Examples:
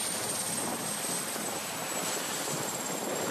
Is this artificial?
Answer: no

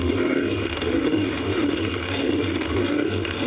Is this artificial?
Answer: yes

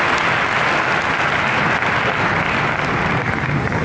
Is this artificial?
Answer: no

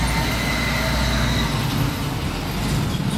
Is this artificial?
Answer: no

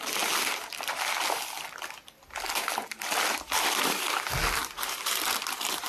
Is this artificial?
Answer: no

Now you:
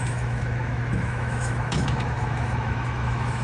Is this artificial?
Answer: yes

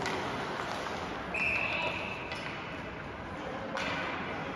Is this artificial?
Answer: no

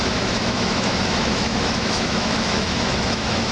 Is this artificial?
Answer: yes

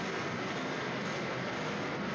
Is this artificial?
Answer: no